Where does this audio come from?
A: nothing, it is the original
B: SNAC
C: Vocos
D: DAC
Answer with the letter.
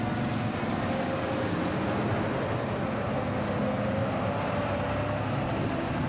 A